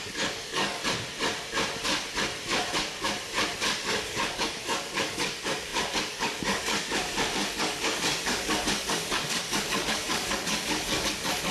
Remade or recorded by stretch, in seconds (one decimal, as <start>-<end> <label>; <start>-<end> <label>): 0.0-0.8 remade; 0.8-3.8 recorded; 3.8-11.5 remade